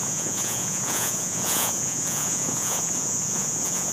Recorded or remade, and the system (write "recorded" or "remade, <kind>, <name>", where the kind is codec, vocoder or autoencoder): remade, vocoder, Vocos